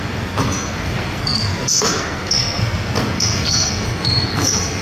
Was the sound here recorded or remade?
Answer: remade